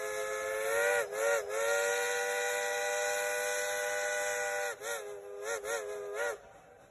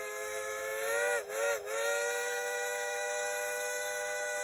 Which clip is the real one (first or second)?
first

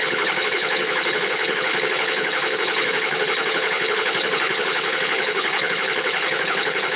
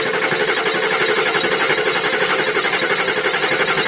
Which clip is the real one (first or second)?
second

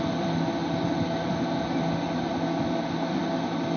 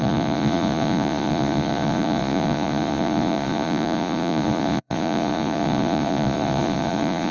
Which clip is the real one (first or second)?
first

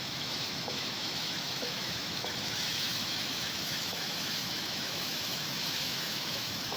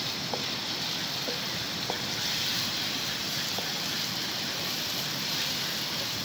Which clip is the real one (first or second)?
second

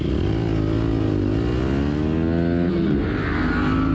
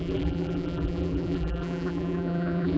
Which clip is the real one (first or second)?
first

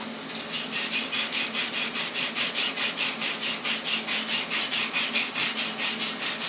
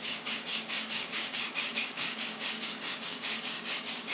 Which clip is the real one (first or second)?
first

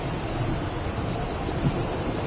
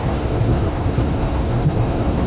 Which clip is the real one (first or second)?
first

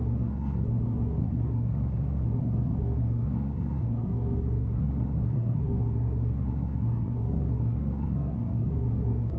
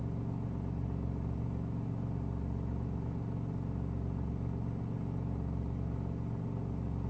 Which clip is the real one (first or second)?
second